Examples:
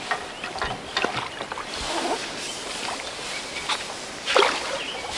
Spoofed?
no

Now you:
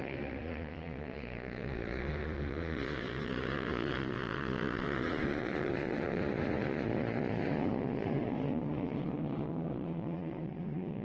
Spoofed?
yes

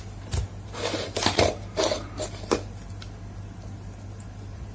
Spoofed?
no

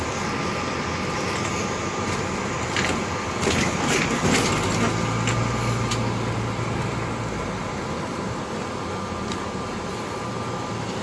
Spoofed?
no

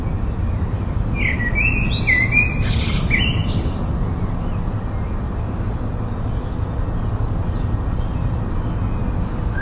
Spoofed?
no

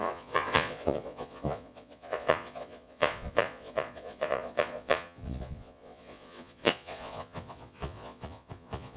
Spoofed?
yes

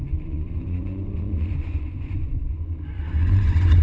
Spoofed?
yes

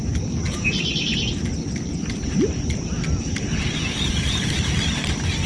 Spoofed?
no